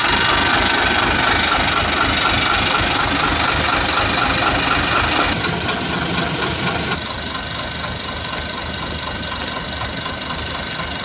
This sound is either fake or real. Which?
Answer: real